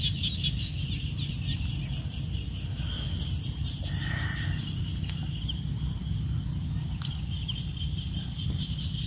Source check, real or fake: real